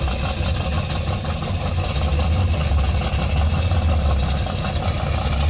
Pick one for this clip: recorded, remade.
recorded